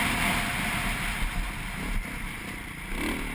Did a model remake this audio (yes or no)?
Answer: no